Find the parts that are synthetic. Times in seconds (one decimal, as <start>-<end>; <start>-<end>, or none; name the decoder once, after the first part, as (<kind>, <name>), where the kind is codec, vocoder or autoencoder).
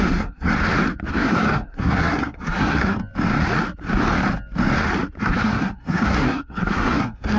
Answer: 0.0-0.5 (codec, SNAC); 1.1-3.0; 5.2-7.4